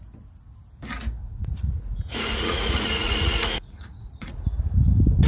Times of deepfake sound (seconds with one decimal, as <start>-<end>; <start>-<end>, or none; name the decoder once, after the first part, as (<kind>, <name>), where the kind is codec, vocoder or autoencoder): 1.2-4.4 (vocoder, Vocos)